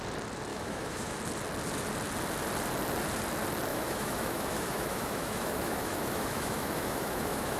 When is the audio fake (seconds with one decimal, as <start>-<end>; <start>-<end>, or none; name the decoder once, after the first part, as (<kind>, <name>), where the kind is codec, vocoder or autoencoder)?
0.5-1.2 (autoencoder, DAC-VAE); 3.7-7.6